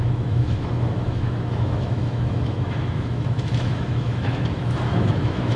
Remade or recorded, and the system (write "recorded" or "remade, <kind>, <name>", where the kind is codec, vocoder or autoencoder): remade, autoencoder, DAC-VAE